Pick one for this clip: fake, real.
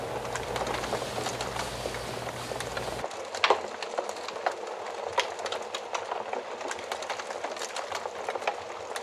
real